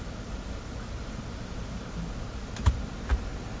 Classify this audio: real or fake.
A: real